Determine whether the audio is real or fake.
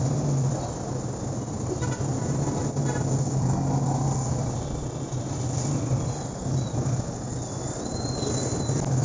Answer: real